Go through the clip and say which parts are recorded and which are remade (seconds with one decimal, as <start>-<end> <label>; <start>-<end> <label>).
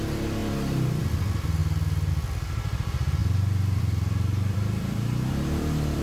0.0-1.6 remade; 1.6-2.1 recorded; 2.1-6.0 remade